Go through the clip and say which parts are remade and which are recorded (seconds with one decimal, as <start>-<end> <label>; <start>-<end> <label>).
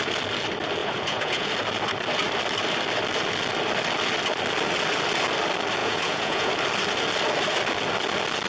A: 0.0-0.8 recorded; 0.8-1.5 remade; 1.5-5.8 recorded; 5.8-6.5 remade; 6.5-8.5 recorded